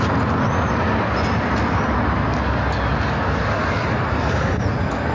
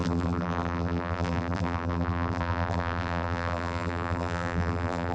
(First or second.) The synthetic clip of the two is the second